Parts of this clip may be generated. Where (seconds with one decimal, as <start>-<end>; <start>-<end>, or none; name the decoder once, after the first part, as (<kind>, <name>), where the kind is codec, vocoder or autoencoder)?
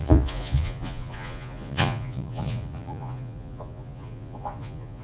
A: 0.0-5.0 (vocoder, Vocos)